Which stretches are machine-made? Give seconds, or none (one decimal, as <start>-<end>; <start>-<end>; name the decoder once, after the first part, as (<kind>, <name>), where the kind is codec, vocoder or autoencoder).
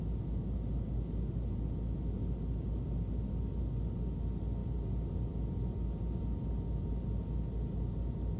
none